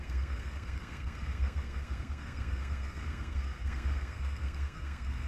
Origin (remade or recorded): remade